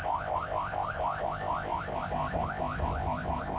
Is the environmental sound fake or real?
fake